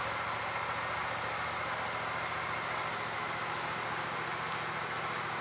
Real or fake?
real